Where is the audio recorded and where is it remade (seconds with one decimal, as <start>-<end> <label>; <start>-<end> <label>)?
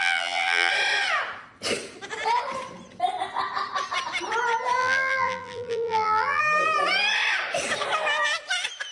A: 0.0-0.7 remade; 0.7-4.8 recorded; 4.8-6.4 remade; 6.4-8.9 recorded